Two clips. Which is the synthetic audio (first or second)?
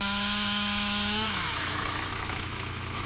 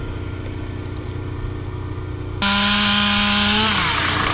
first